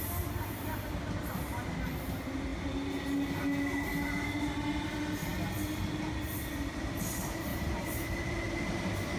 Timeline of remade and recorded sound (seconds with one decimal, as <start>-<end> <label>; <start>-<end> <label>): 0.0-7.5 recorded; 7.5-8.6 remade; 8.6-9.2 recorded